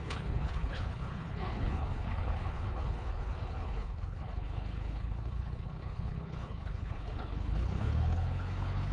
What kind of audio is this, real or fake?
fake